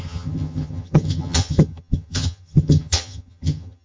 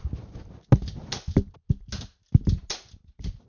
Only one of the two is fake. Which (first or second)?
first